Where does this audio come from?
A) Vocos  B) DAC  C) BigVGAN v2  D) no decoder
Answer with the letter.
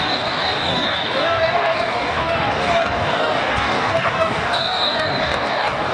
B